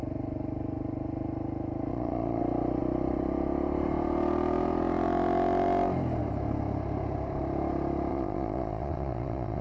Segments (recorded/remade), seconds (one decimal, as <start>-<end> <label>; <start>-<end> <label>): 0.0-1.9 recorded; 1.9-2.4 remade; 2.4-8.1 recorded; 8.1-9.6 remade